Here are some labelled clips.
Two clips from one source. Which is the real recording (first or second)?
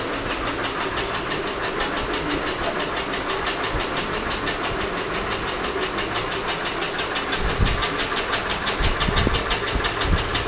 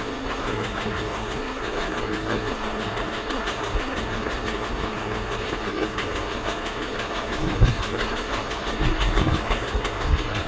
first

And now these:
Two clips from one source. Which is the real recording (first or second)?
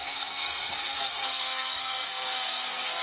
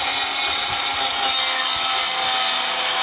second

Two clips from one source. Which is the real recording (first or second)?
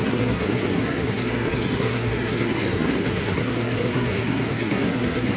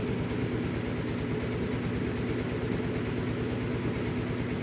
second